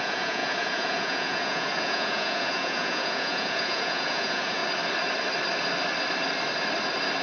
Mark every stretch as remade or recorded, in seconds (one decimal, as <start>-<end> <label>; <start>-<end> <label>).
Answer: 0.0-4.6 remade; 4.6-7.2 recorded